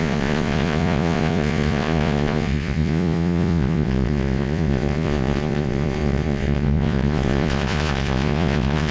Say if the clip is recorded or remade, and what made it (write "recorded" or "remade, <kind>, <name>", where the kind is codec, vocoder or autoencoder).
remade, vocoder, Vocos